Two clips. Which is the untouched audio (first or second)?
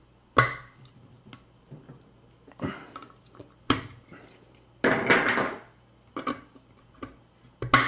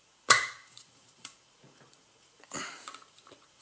first